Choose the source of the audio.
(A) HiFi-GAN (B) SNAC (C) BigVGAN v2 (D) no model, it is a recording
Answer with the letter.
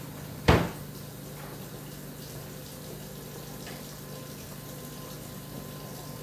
D